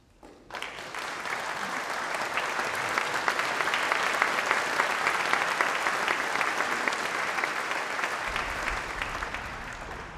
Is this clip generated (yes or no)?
no